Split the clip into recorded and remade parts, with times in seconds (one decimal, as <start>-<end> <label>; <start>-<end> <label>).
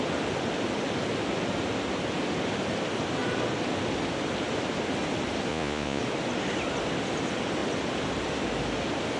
0.0-5.5 recorded; 5.5-6.0 remade; 6.0-9.2 recorded